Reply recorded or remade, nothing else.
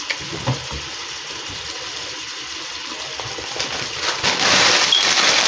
remade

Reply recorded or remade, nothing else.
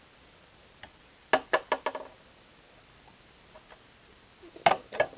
recorded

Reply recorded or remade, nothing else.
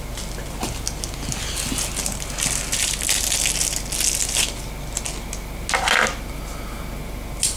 recorded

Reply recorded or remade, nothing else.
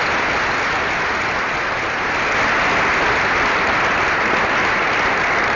recorded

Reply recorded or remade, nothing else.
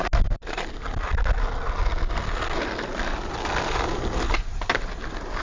recorded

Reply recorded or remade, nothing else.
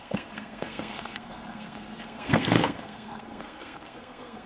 remade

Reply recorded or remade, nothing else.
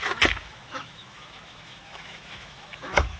remade